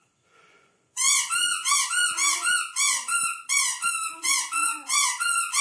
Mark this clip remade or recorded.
remade